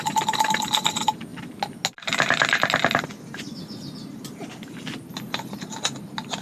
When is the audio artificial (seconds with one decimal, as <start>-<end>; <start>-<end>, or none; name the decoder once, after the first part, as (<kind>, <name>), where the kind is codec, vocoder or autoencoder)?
none